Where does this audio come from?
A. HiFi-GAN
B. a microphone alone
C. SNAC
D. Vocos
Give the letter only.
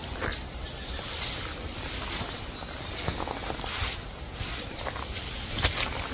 B